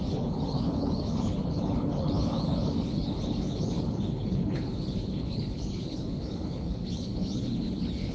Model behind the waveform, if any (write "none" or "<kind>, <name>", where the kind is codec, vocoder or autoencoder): codec, HILCodec